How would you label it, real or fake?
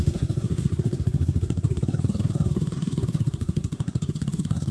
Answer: fake